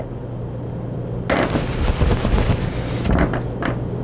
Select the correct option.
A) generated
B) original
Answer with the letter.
B